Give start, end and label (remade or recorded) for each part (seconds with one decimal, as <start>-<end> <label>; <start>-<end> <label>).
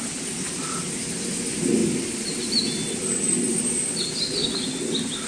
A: 0.0-5.3 recorded